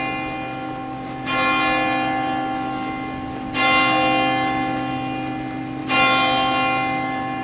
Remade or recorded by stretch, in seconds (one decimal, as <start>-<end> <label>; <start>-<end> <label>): 0.0-7.4 recorded